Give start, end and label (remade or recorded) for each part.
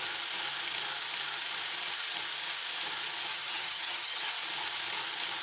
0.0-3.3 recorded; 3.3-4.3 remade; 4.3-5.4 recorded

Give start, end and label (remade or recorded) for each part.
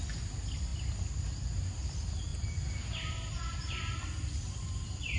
0.0-5.2 recorded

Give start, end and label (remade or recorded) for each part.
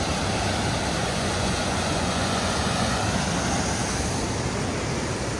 0.0-1.0 recorded; 1.0-3.0 remade; 3.0-5.4 recorded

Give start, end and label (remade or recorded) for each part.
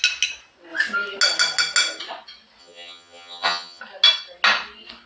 0.0-2.6 recorded; 2.6-3.8 remade; 3.8-5.1 recorded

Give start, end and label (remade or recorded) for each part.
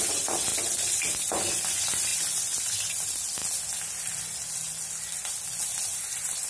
0.0-0.5 remade; 0.5-1.0 recorded; 1.0-2.1 remade; 2.1-2.7 recorded; 2.7-3.4 remade; 3.4-5.6 recorded; 5.6-6.5 remade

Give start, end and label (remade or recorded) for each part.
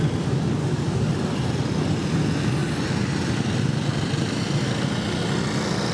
0.0-0.6 recorded; 0.6-1.1 remade; 1.1-5.9 recorded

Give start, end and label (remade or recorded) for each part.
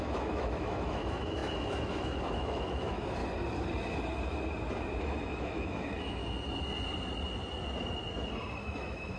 0.0-3.2 remade; 3.2-5.0 recorded; 5.0-6.2 remade; 6.2-8.6 recorded; 8.6-9.2 remade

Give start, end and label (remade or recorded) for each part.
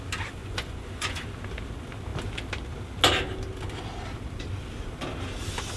0.0-0.4 recorded; 0.4-1.2 remade; 1.2-5.8 recorded